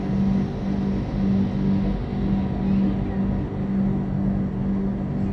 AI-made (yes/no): no